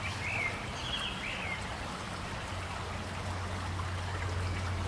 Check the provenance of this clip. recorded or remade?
recorded